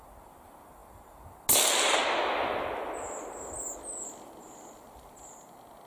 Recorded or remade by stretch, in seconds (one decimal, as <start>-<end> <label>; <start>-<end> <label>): 0.0-5.9 recorded